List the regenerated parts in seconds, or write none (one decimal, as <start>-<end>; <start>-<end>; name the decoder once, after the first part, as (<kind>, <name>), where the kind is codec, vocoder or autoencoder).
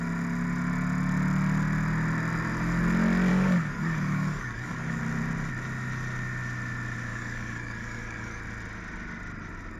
3.3-5.0 (codec, DAC); 7.1-8.4